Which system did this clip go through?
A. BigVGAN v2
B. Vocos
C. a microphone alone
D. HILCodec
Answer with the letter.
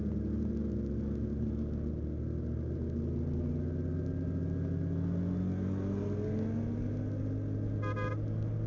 C